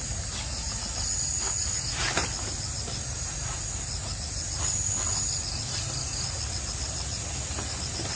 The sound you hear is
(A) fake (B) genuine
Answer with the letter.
B